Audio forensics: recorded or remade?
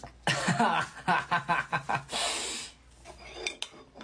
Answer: recorded